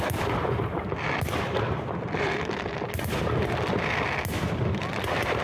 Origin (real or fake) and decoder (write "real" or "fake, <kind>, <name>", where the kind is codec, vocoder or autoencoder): real